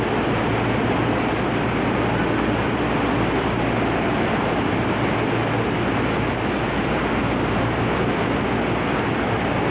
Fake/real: real